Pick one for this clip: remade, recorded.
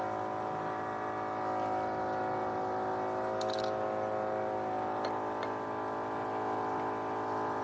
recorded